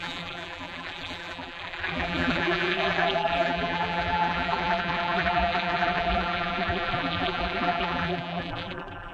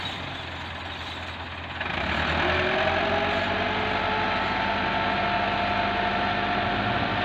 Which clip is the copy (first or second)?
first